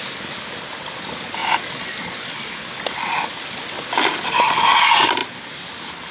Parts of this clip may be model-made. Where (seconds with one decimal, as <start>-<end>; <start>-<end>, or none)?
none